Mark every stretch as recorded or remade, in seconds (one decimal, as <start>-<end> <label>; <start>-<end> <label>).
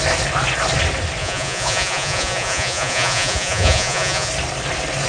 0.0-1.2 recorded; 1.2-4.3 remade; 4.3-5.1 recorded